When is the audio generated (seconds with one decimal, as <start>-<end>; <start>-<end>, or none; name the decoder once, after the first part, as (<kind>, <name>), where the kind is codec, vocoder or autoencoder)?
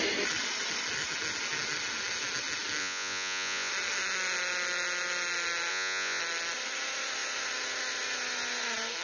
2.8-3.7 (vocoder, Vocos); 5.7-6.2